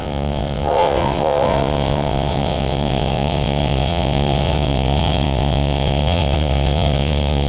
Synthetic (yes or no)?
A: yes